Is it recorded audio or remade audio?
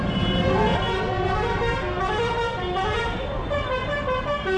recorded